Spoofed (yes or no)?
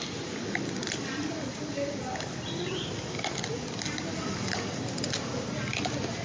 yes